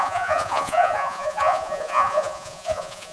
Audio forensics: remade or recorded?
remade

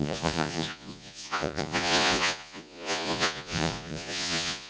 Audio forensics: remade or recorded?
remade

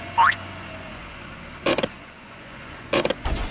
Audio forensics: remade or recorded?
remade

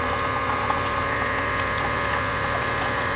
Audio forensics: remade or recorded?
remade